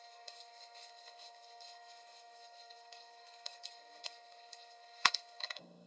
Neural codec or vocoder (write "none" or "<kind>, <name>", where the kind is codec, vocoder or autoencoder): codec, SNAC